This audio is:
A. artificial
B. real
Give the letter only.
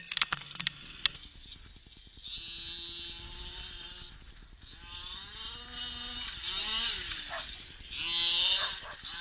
B